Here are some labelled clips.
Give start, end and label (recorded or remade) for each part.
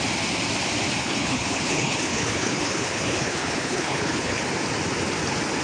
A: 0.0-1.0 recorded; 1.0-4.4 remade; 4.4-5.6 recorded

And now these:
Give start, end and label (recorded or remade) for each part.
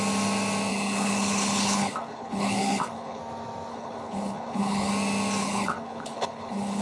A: 0.0-0.7 recorded; 0.7-3.2 remade; 3.2-3.7 recorded; 3.7-4.9 remade; 4.9-5.4 recorded; 5.4-6.8 remade